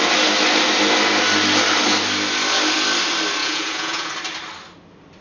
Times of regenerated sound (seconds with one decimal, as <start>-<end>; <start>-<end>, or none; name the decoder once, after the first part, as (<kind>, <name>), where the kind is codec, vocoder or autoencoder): 3.4-4.1 (vocoder, Vocos)